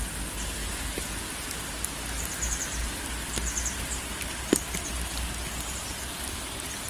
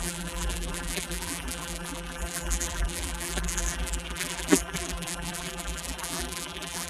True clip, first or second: first